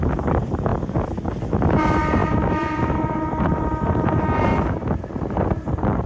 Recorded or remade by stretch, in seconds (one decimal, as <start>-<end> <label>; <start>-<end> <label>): 0.0-0.7 remade; 0.7-1.8 recorded; 1.8-4.5 remade; 4.5-5.1 recorded; 5.1-6.1 remade